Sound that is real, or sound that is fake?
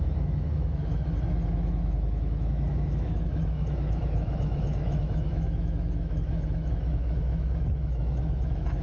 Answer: fake